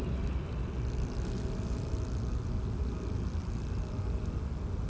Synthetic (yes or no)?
no